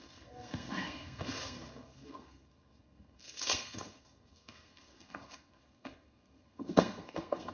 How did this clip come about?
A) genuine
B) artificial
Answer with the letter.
B